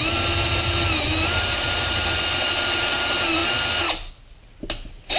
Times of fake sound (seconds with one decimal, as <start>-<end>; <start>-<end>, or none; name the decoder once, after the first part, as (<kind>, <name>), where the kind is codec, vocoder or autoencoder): none